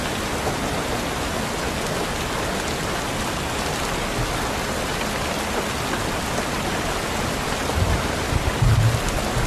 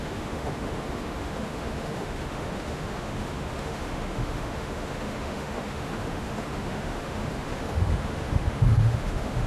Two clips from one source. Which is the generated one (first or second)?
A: second